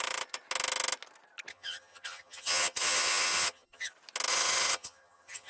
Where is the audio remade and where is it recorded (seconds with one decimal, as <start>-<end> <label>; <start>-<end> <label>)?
0.0-1.5 recorded; 1.5-3.9 remade; 3.9-4.3 recorded; 4.3-5.5 remade